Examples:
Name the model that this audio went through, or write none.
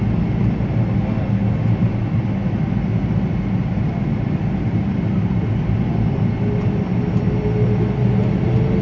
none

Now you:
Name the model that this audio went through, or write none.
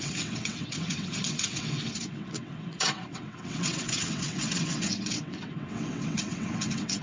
vocoder, WaveNeXt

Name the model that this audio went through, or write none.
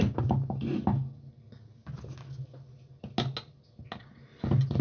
none